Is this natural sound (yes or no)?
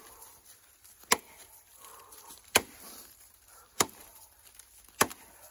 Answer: no